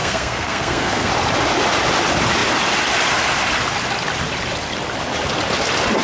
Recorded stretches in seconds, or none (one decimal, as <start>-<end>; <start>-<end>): 1.1-6.0